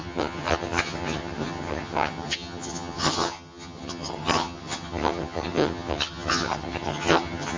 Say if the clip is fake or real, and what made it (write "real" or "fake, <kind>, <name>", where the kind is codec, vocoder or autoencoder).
fake, vocoder, HiFi-GAN